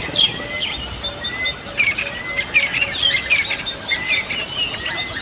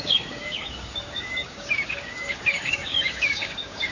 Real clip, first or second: first